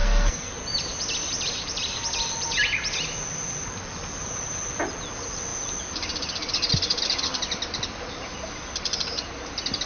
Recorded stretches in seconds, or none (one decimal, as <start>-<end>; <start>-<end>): 0.5-9.9